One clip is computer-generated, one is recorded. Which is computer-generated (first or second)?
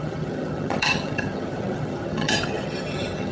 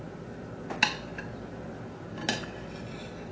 first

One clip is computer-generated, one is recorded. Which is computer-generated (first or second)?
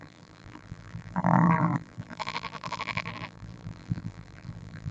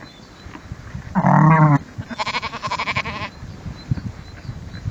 first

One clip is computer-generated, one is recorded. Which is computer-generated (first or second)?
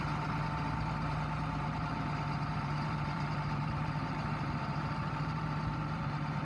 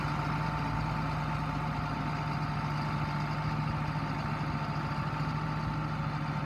first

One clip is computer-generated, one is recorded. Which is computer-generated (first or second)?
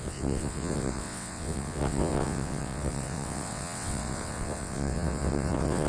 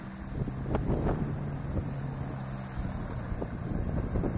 first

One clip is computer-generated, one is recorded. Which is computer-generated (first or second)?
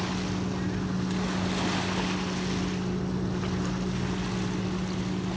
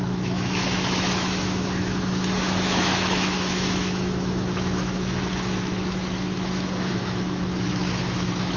second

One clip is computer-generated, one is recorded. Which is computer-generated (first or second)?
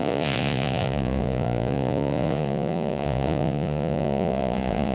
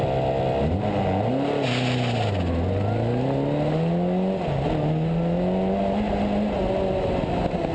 first